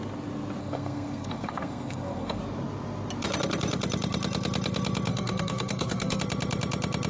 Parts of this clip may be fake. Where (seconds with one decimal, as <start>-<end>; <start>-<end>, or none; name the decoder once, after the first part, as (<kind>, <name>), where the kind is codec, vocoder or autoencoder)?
0.6-2.4 (codec, SNAC); 5.1-6.2

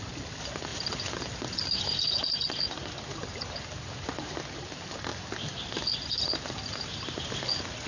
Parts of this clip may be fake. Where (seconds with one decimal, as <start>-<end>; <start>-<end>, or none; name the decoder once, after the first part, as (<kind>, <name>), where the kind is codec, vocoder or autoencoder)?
5.1-7.2 (vocoder, BigVGAN v2)

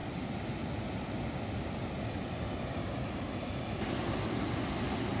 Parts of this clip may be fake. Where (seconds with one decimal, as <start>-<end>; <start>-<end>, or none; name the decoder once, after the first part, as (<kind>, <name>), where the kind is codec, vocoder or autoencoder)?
none